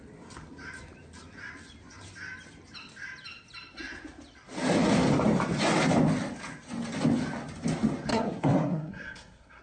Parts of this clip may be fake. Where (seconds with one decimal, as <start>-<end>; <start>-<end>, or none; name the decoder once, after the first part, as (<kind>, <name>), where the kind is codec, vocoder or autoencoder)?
8.1-9.6 (codec, SNAC)